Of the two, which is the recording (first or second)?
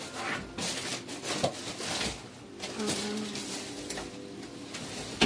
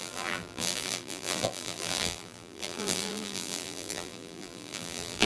first